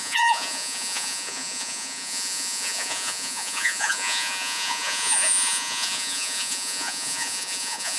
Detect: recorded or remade remade